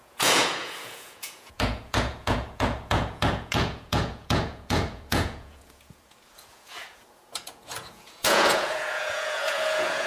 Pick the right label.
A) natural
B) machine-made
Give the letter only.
B